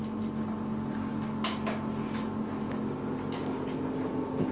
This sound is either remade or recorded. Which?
recorded